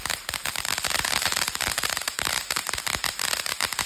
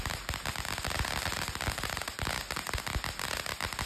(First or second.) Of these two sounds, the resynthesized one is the first